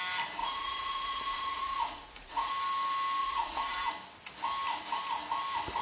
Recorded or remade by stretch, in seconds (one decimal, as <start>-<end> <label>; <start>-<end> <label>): 0.0-0.4 recorded; 0.4-2.5 remade; 2.5-3.2 recorded; 3.2-3.9 remade; 3.9-5.8 recorded